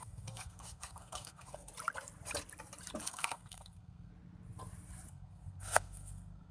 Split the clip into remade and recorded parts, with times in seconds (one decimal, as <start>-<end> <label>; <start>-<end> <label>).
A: 0.0-1.7 remade; 1.7-3.0 recorded; 3.0-4.1 remade; 4.1-5.1 recorded; 5.1-6.5 remade